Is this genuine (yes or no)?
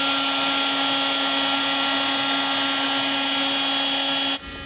yes